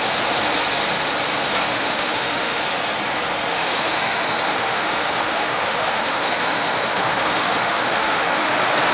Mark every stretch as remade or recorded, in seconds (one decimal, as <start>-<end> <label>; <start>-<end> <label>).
0.0-1.7 recorded; 1.7-2.6 remade; 2.6-3.5 recorded; 3.5-8.5 remade; 8.5-8.9 recorded